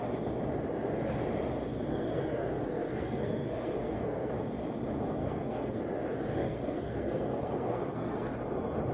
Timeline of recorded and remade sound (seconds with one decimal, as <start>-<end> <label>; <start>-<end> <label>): 0.0-1.9 recorded; 1.9-4.3 remade; 4.3-5.2 recorded; 5.2-5.8 remade; 5.8-6.4 recorded; 6.4-8.3 remade; 8.3-8.9 recorded